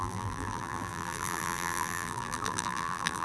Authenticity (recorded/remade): remade